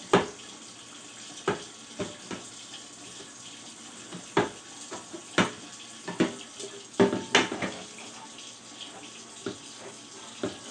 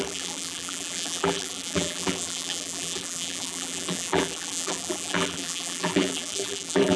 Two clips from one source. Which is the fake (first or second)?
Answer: second